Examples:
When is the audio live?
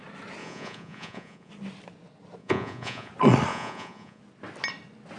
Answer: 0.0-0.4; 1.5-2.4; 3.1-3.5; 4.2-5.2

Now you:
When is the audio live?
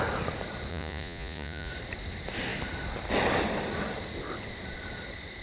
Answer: 0.0-0.7; 1.7-5.4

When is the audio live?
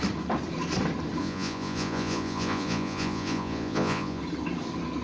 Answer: 0.0-1.2; 4.2-5.0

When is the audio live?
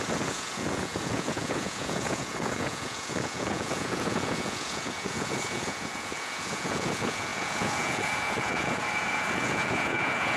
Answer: none